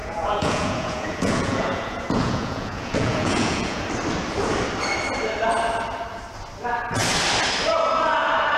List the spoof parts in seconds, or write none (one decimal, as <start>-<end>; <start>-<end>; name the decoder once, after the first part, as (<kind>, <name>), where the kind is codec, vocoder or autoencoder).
0.0-3.8 (vocoder, Vocos)

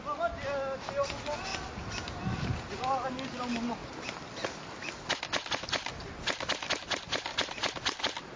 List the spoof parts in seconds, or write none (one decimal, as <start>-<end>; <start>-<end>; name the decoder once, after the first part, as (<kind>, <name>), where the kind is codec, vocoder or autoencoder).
none

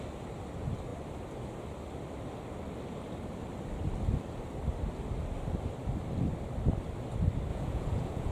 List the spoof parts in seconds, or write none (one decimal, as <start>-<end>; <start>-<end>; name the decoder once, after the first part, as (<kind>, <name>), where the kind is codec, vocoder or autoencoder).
7.5-8.3 (vocoder, Vocos)

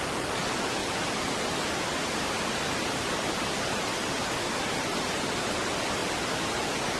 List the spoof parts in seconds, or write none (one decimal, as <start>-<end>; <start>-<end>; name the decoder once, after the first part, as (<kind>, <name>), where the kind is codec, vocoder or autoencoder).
0.8-5.0 (vocoder, BigVGAN v2); 6.0-7.0

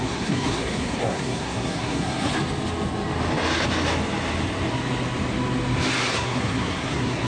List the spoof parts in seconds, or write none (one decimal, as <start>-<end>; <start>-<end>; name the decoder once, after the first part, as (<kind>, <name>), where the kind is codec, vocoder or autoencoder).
0.0-2.3 (codec, SNAC); 6.1-7.3

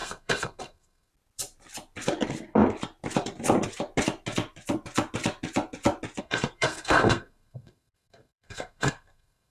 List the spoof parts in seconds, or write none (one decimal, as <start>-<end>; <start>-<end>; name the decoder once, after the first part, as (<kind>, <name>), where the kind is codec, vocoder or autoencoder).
0.0-1.1 (codec, SNAC); 6.2-9.5

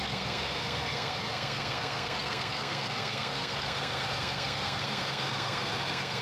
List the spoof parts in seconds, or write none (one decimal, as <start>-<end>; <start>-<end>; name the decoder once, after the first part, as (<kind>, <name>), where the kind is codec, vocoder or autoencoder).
0.0-6.2 (codec, SNAC)